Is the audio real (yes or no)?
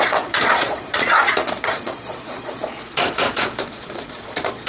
no